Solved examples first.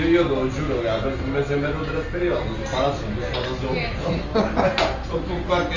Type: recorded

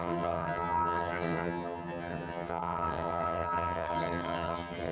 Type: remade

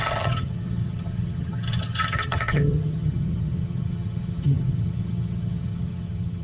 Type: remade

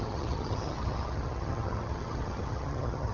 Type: remade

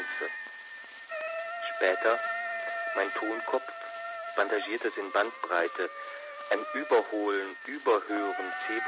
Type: recorded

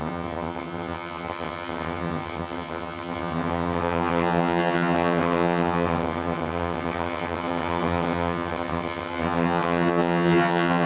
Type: remade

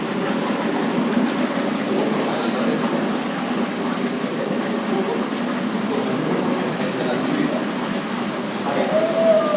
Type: recorded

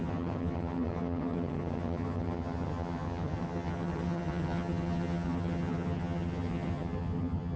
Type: remade